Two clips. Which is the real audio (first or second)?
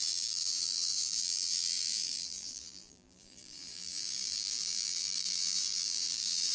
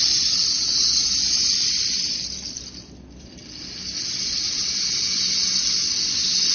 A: second